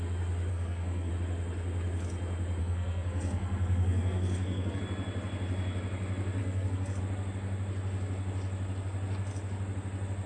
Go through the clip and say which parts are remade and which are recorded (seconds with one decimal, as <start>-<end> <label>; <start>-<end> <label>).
0.0-0.5 recorded; 0.5-1.1 remade; 1.1-2.6 recorded; 2.6-4.8 remade; 4.8-6.4 recorded; 6.4-7.0 remade; 7.0-10.3 recorded